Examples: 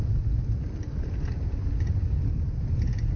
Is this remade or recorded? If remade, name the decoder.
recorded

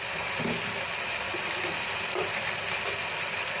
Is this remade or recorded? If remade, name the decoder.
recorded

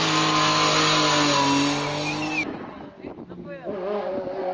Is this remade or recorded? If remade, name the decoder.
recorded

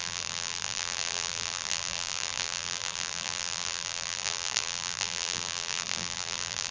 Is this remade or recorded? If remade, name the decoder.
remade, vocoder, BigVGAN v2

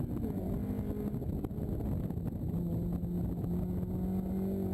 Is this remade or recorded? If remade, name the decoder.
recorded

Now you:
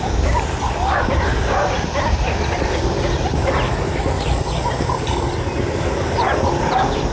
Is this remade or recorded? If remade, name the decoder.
recorded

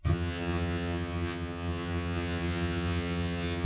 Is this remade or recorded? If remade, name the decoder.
remade, vocoder, HiFi-GAN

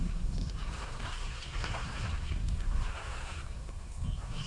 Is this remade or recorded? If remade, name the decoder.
remade, codec, SNAC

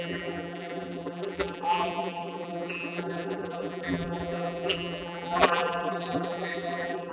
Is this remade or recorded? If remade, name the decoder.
remade, vocoder, BigVGAN v2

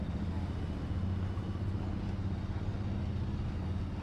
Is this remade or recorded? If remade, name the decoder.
recorded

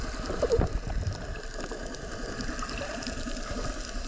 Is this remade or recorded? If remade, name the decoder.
recorded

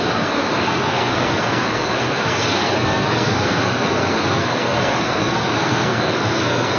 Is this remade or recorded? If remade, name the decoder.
remade, codec, SNAC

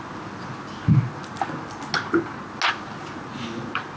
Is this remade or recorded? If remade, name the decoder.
recorded